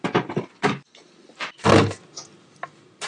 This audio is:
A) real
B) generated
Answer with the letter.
A